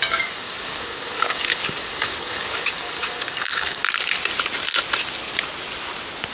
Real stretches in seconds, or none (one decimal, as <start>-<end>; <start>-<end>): 3.8-6.3